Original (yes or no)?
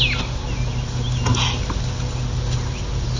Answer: yes